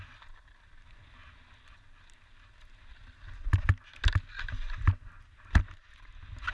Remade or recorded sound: recorded